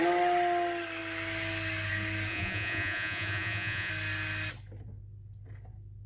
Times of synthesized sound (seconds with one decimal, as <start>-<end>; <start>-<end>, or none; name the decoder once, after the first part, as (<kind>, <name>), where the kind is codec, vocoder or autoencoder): 2.3-3.9 (vocoder, Vocos)

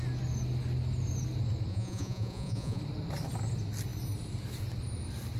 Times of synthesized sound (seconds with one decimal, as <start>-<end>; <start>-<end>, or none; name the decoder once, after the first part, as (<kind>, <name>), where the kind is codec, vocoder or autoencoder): 1.7-2.8 (vocoder, Vocos)

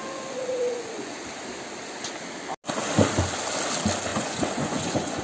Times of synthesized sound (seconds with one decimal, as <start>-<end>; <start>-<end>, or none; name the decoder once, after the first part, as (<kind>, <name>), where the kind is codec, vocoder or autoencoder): 0.0-1.2 (vocoder, Vocos); 4.1-5.2